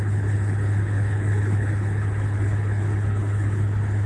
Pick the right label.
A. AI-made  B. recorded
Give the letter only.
A